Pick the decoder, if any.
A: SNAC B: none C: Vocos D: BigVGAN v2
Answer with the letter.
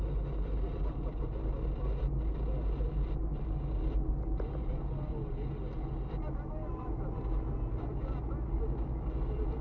B